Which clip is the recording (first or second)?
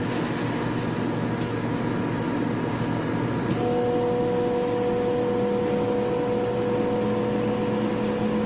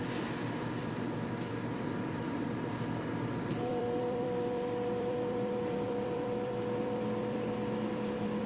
first